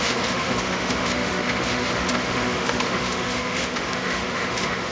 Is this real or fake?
fake